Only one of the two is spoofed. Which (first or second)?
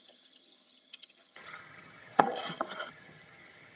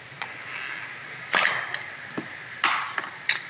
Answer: first